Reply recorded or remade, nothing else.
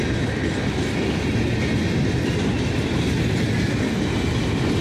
recorded